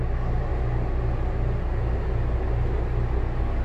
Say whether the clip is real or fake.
real